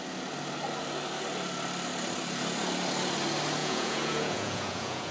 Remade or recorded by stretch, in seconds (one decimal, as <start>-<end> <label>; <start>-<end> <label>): 0.0-3.6 recorded; 3.6-5.1 remade